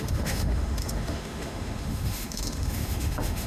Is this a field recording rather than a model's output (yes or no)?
no